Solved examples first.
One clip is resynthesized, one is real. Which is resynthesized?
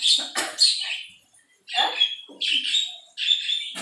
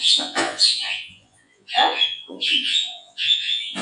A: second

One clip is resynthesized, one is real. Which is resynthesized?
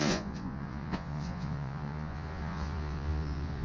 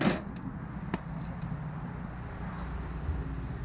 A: first